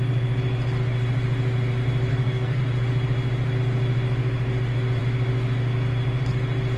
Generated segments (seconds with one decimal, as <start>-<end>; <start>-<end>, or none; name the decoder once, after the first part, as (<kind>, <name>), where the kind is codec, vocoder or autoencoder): 2.1-2.6 (codec, SNAC)

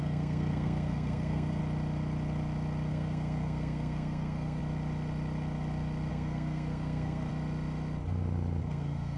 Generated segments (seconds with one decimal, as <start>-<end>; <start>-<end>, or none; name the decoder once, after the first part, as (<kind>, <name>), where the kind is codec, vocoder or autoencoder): 0.0-1.6 (codec, SNAC); 2.9-4.6; 6.1-7.3; 8.6-9.2

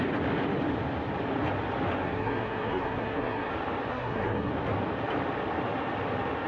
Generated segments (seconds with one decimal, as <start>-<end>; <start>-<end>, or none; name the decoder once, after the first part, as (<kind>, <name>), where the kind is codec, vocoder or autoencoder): 2.0-3.5 (codec, SNAC); 3.9-4.5

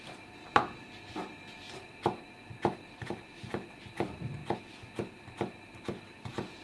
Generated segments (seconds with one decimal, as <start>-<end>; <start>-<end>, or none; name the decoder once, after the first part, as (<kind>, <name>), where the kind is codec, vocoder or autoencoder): none